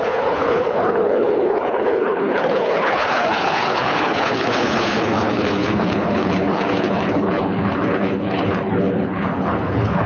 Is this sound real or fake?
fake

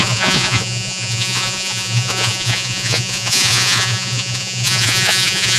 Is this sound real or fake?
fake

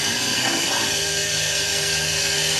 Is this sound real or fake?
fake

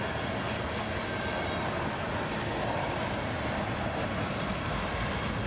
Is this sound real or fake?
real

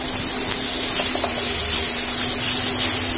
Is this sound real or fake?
real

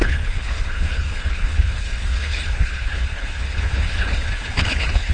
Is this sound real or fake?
fake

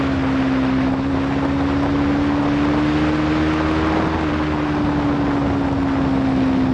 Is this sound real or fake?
real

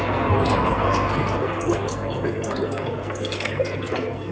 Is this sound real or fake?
fake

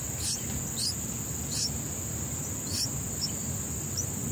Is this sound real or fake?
real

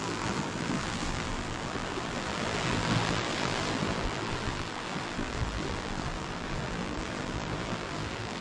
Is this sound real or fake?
fake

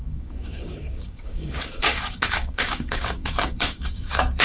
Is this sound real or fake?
fake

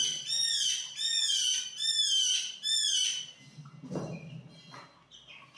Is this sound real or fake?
real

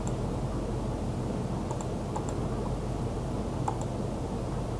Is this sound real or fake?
real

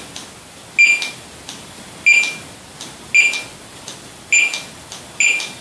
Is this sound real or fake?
real